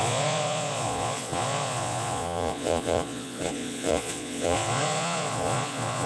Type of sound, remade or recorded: remade